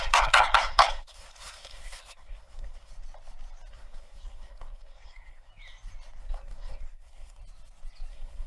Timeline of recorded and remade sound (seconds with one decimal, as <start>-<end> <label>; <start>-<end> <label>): 0.0-2.9 remade; 2.9-3.7 recorded; 3.7-5.5 remade; 5.5-6.2 recorded; 6.2-7.4 remade; 7.4-8.1 recorded; 8.1-8.5 remade